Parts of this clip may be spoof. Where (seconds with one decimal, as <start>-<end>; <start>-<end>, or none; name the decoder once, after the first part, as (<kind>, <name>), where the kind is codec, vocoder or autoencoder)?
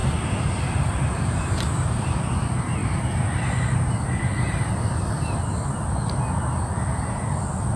0.0-2.1 (vocoder, BigVGAN v2); 4.3-5.7